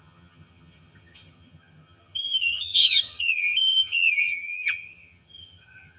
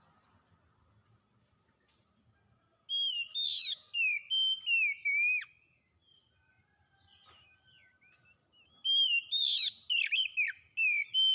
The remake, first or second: first